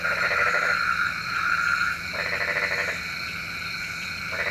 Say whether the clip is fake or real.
real